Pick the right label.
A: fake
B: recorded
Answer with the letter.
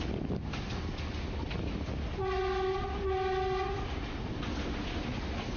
B